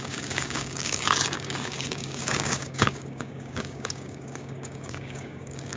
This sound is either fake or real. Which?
fake